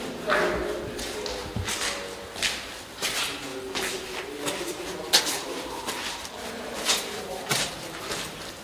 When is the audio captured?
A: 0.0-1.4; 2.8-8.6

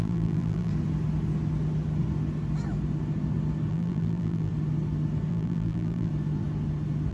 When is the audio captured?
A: 0.7-3.7; 4.5-5.3; 6.1-7.1

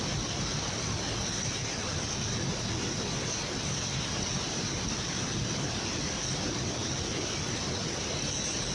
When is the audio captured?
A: 0.0-8.7

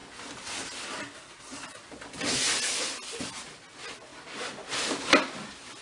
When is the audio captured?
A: 0.0-5.8

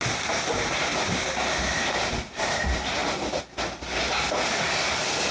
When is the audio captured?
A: 3.0-5.3

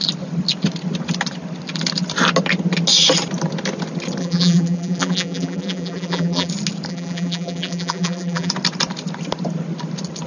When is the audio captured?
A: 0.0-4.2; 6.5-6.9; 8.5-10.3

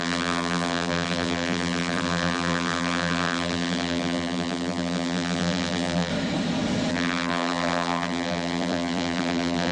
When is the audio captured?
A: 6.1-6.9